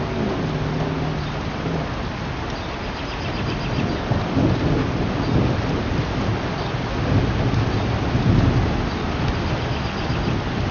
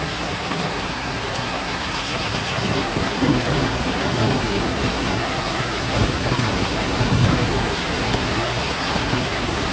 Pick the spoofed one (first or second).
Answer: second